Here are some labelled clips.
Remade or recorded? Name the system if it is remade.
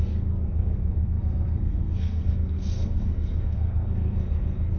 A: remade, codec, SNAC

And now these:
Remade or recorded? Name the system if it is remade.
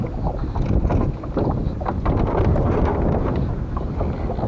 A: recorded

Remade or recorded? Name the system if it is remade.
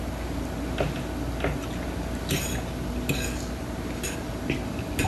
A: recorded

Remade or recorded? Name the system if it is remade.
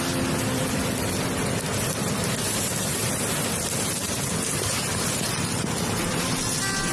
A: recorded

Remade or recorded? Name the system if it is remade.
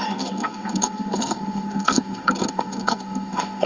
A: remade, codec, SNAC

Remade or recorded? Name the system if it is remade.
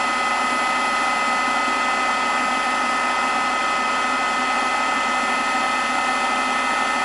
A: recorded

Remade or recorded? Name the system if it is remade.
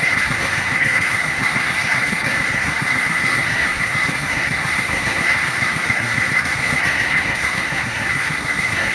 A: remade, codec, SNAC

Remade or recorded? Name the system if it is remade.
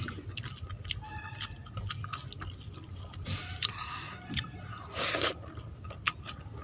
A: recorded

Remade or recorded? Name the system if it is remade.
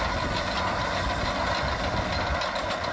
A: recorded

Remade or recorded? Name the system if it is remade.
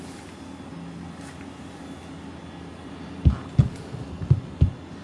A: recorded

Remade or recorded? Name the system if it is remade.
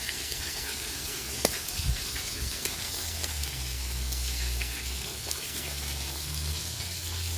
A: remade, codec, SNAC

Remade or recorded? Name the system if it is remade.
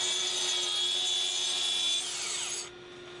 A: recorded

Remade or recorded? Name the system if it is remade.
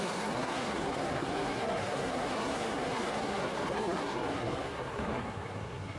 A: remade, codec, SNAC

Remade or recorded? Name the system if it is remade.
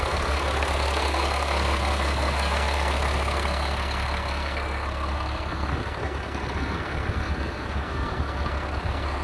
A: remade, codec, SNAC